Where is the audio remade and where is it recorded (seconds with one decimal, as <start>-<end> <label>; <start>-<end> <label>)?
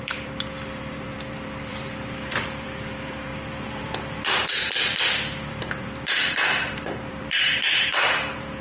0.0-8.6 remade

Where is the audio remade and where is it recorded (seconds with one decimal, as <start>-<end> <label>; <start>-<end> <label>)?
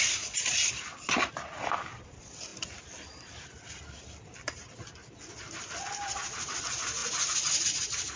0.0-8.2 recorded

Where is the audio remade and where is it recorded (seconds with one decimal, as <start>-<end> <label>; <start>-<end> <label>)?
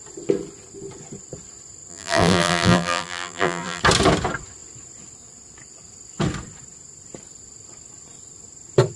0.0-1.9 recorded; 1.9-3.8 remade; 3.8-9.0 recorded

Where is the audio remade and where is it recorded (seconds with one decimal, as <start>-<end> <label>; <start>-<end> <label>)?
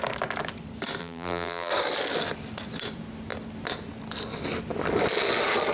0.0-1.0 recorded; 1.0-1.7 remade; 1.7-5.7 recorded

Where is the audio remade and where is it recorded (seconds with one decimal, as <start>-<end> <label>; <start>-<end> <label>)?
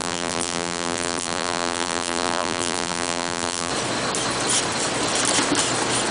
0.0-3.7 remade; 3.7-6.1 recorded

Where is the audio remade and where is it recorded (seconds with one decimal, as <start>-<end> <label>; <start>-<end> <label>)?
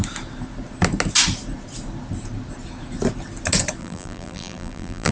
0.0-3.8 recorded; 3.8-5.1 remade